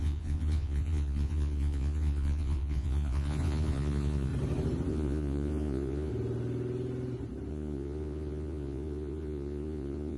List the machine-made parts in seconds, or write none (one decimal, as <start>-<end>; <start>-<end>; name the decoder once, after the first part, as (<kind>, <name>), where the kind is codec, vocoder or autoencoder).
0.0-4.3 (vocoder, Vocos); 4.9-6.1; 7.5-10.2